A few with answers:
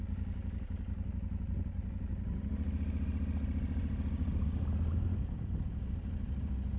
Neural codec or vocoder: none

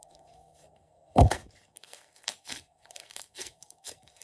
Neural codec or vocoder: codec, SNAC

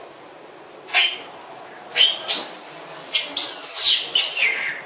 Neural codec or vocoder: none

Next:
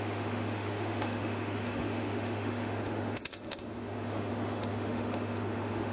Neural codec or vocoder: autoencoder, DAC-VAE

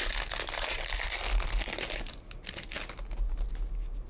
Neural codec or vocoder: none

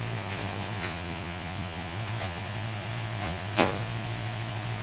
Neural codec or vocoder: vocoder, Vocos